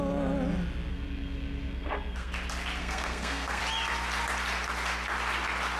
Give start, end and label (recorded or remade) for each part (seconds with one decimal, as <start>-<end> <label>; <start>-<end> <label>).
0.0-0.9 recorded; 0.9-2.3 remade; 2.3-2.8 recorded; 2.8-3.6 remade; 3.6-5.8 recorded